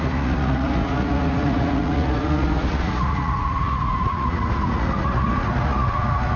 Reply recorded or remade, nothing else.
remade